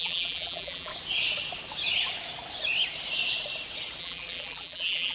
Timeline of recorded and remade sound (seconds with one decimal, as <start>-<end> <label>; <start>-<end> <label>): 0.0-0.9 remade; 0.9-4.0 recorded; 4.0-5.1 remade